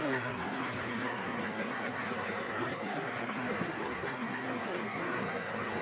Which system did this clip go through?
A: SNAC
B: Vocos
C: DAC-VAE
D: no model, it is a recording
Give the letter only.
A